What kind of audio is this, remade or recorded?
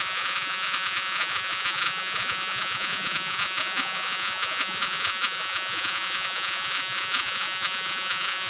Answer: remade